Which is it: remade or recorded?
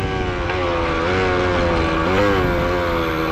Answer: recorded